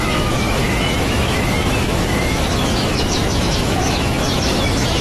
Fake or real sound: fake